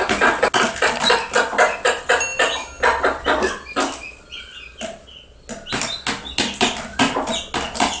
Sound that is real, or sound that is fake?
real